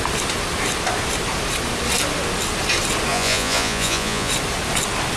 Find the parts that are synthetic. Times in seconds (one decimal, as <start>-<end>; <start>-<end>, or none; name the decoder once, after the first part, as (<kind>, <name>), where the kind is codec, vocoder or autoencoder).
3.1-4.3 (vocoder, Vocos)